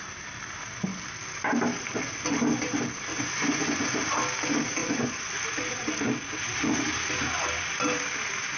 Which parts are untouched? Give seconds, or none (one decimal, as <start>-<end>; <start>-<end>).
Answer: 0.0-3.1; 3.9-4.8; 5.3-8.6